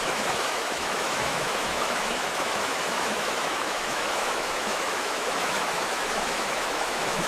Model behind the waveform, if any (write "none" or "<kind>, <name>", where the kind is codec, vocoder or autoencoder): autoencoder, DAC-VAE